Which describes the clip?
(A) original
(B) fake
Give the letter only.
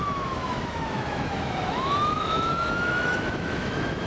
B